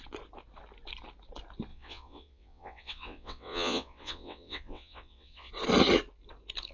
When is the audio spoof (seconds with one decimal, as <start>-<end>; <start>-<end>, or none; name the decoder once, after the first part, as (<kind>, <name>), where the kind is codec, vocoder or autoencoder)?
1.7-5.5 (vocoder, WaveNeXt)